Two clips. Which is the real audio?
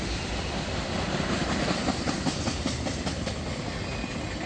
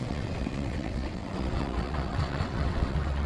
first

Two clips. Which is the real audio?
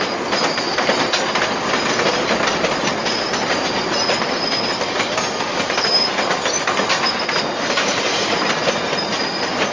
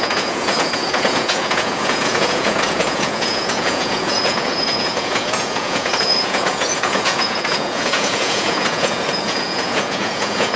first